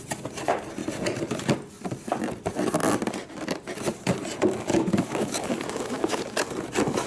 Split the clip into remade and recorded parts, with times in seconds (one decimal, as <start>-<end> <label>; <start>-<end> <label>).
0.0-4.7 recorded; 4.7-6.2 remade; 6.2-7.1 recorded